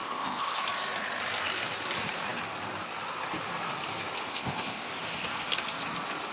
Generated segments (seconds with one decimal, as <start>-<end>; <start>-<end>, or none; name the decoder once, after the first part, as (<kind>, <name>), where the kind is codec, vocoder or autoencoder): 0.0-0.6 (codec, ZipCodec); 4.3-4.9